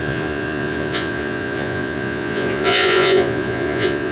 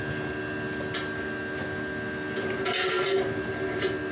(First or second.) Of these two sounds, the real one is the second